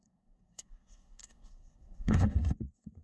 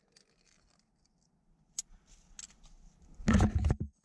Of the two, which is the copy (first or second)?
first